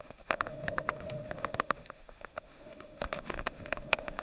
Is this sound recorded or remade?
remade